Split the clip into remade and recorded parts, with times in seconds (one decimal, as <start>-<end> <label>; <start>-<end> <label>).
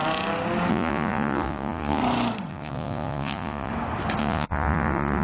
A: 0.0-0.7 recorded; 0.7-2.0 remade; 2.0-2.5 recorded; 2.5-3.7 remade; 3.7-4.2 recorded; 4.2-5.2 remade